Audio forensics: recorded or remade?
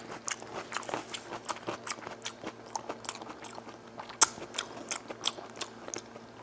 recorded